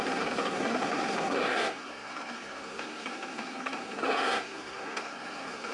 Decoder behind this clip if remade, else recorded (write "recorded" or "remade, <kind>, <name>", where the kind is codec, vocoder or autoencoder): remade, codec, SNAC